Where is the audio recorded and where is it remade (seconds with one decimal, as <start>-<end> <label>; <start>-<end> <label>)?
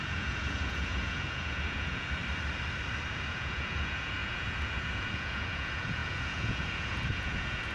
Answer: 0.0-2.2 remade; 2.2-3.1 recorded; 3.1-7.7 remade